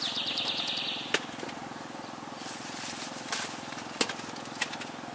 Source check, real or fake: real